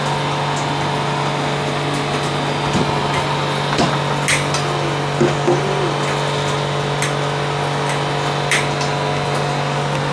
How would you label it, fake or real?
real